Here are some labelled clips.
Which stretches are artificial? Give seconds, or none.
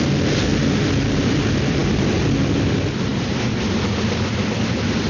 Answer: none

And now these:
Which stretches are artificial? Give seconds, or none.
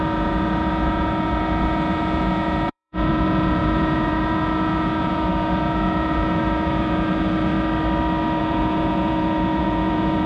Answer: 0.0-7.5 (vocoder, Vocos); 8.4-10.3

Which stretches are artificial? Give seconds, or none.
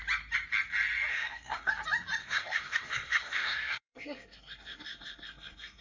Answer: 1.1-1.7 (codec, SNAC); 2.2-5.8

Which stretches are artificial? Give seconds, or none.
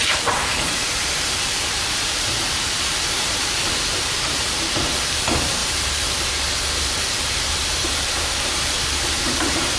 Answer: 0.0-9.8 (vocoder, BigVGAN v2)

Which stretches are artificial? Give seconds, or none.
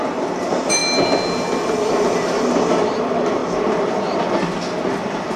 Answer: none